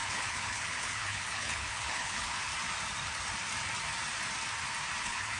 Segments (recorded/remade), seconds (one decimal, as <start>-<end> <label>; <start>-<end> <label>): 0.0-2.5 remade; 2.5-5.0 recorded; 5.0-5.4 remade